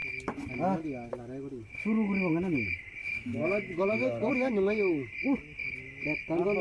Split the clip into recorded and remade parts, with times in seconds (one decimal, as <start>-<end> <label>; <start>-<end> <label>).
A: 0.0-3.0 recorded; 3.0-4.3 remade; 4.3-6.6 recorded